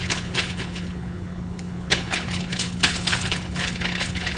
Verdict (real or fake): fake